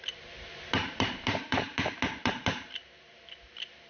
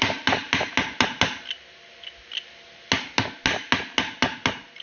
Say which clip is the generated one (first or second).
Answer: first